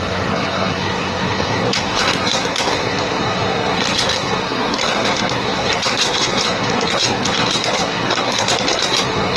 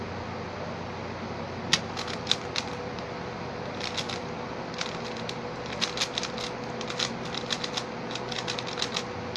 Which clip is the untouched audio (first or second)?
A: second